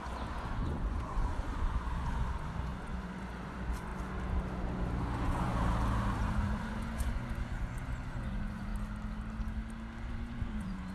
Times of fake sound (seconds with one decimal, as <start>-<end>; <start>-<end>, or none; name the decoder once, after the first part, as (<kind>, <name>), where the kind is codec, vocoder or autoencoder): 0.0-3.9 (vocoder, Vocos); 5.0-5.5; 6.2-8.7; 10.1-10.9